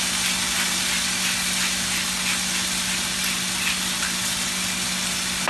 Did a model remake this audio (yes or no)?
no